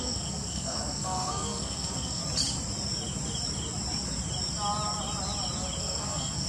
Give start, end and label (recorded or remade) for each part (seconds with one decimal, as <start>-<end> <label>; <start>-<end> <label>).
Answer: 0.0-2.2 remade; 2.2-5.8 recorded; 5.8-6.5 remade